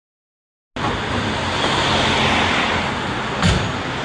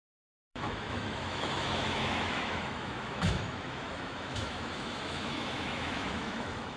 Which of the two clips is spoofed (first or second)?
second